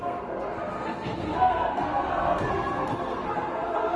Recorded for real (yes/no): no